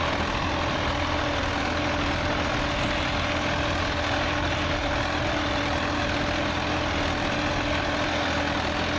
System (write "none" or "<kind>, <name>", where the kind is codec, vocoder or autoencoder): none